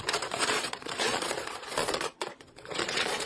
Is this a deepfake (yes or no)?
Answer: yes